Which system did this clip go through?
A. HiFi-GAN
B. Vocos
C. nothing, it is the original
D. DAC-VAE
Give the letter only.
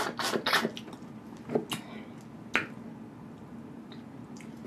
C